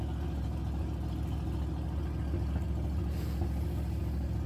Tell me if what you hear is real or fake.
real